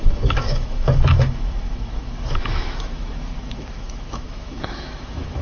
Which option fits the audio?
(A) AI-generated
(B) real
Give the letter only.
A